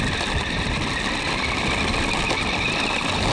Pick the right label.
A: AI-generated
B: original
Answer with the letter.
B